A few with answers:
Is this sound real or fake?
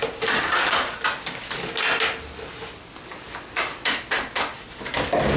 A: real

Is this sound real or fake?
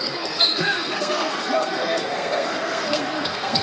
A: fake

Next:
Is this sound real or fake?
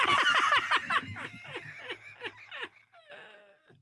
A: real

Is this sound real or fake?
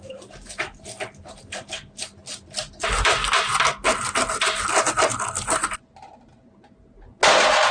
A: real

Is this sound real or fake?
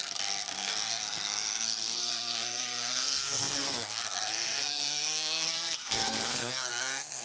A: fake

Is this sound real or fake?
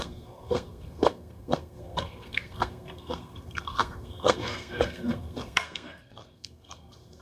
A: fake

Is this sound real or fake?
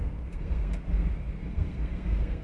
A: fake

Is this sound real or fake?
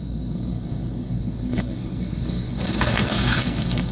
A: fake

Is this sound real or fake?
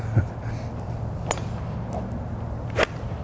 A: real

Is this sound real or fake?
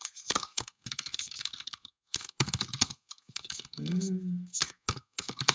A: fake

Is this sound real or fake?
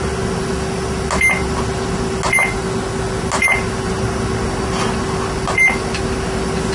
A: real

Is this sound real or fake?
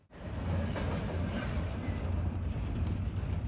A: real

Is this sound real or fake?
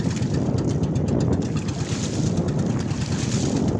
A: real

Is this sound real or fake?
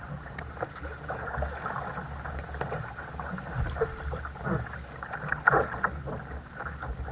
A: real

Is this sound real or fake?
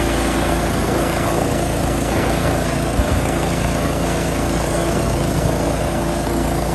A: fake